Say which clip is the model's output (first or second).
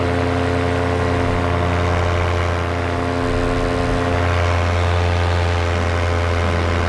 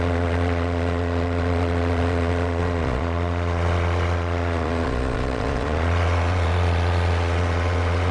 second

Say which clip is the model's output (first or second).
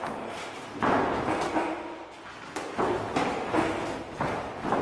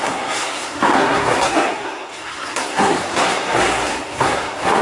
second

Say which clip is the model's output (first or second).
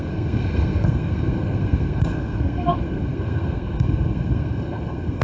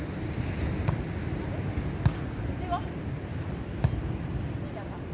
first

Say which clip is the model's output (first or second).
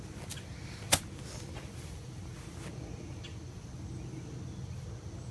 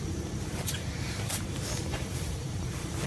second